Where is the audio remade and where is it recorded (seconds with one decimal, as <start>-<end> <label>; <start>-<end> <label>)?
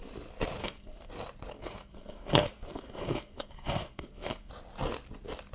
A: 0.0-0.6 recorded; 0.6-1.1 remade; 1.1-1.5 recorded; 1.5-4.5 remade; 4.5-5.5 recorded